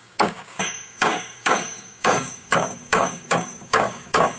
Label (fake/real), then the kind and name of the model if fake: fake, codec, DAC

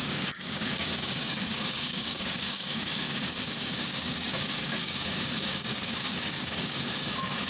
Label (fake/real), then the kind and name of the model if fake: fake, codec, DAC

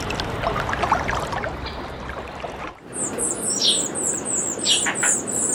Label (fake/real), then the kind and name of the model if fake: real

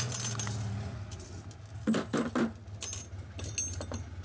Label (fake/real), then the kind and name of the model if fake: real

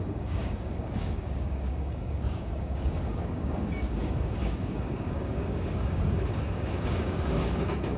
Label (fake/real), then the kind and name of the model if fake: fake, codec, DAC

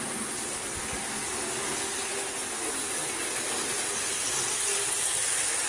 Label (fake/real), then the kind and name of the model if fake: real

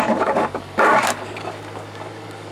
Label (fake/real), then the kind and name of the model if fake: fake, codec, DAC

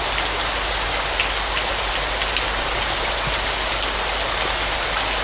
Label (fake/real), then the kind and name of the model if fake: real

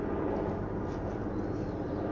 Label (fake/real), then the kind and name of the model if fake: real